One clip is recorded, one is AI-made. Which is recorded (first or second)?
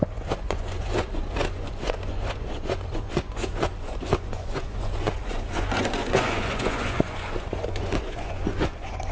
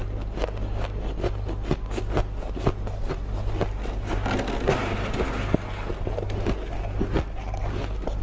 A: second